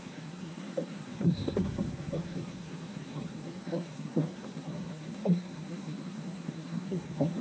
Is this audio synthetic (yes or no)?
yes